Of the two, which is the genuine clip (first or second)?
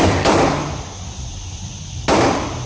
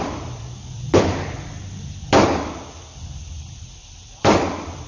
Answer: first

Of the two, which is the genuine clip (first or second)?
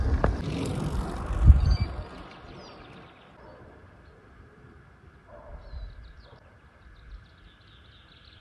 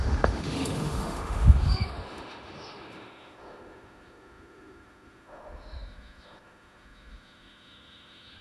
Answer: first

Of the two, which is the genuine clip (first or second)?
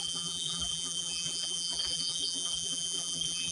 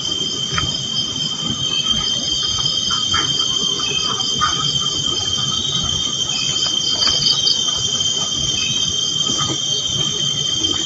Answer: second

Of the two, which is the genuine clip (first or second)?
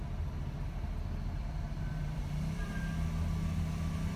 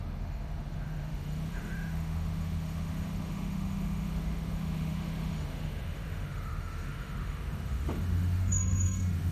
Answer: first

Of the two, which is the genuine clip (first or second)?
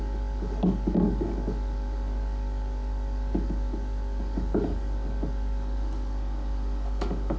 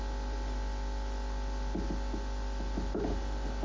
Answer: second